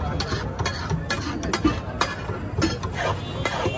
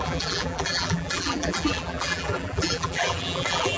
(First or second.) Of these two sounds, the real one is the first